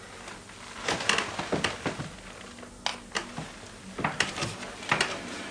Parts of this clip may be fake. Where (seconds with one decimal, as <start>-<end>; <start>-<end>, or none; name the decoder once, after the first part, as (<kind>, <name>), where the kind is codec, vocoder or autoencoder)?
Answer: none